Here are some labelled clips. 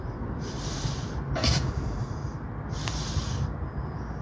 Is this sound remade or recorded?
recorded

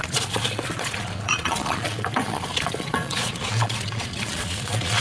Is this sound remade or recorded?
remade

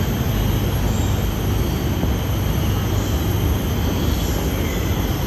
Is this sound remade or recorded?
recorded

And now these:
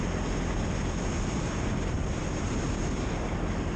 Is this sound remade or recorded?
recorded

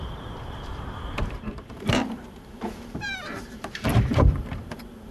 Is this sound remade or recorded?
remade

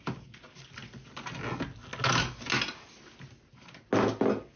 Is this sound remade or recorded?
recorded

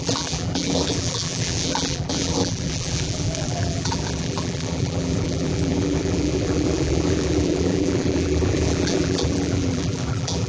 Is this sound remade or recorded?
remade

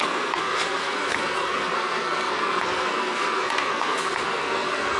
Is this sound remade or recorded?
remade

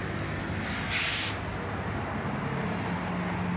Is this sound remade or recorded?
recorded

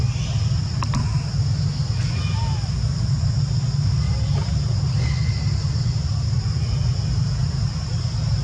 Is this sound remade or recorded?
recorded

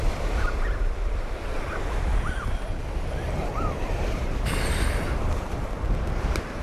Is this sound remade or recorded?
remade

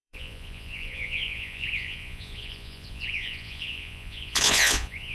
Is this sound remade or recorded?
remade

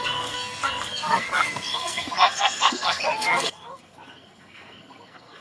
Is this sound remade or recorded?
remade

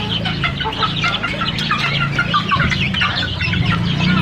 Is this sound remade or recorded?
recorded